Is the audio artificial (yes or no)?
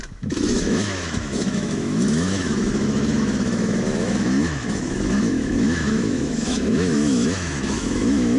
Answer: yes